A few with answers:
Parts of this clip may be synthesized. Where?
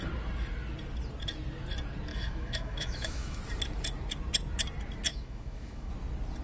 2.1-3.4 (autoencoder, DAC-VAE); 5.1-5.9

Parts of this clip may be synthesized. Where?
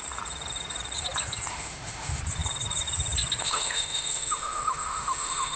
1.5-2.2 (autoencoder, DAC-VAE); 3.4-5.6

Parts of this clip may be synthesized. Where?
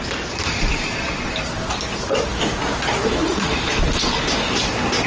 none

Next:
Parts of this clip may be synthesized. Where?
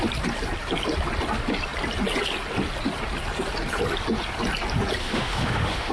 5.0-5.9 (autoencoder, DAC-VAE)